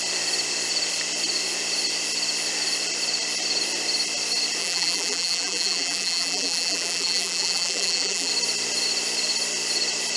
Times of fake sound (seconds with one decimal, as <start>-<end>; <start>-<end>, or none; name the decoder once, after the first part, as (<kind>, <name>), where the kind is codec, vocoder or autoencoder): 4.6-8.3 (vocoder, BigVGAN v2)